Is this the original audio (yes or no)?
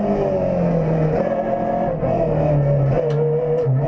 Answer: yes